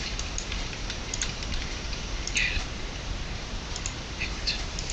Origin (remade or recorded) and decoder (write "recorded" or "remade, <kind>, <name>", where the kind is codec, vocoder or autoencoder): remade, vocoder, BigVGAN v2